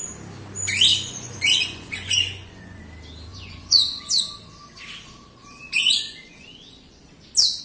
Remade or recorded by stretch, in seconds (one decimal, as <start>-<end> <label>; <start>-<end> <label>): 0.0-0.9 recorded; 0.9-2.8 remade; 2.8-3.3 recorded; 3.3-4.2 remade; 4.2-5.4 recorded; 5.4-7.0 remade; 7.0-7.6 recorded